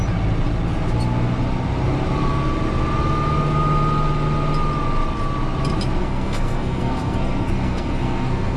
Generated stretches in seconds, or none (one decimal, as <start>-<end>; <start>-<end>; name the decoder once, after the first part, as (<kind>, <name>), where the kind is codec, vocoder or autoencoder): 6.0-8.6 (codec, SNAC)